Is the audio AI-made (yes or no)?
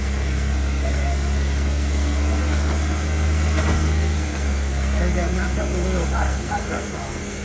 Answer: yes